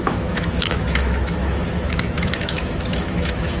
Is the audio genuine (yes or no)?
no